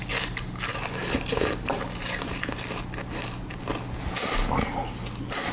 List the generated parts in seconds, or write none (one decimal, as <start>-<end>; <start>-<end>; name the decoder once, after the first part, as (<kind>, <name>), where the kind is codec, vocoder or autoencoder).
none